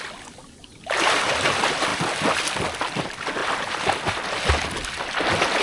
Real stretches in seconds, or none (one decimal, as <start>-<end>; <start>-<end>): 0.0-0.6; 1.3-3.4; 4.4-5.6